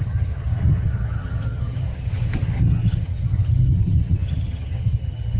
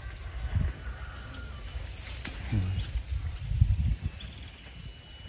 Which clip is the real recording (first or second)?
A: second